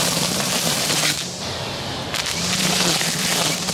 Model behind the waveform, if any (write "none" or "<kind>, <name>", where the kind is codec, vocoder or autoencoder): vocoder, BigVGAN v2